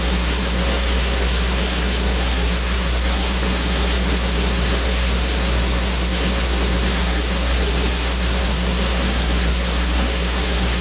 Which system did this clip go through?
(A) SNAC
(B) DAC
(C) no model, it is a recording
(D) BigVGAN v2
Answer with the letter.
A